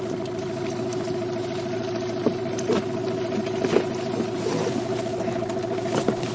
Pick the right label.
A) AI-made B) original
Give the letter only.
B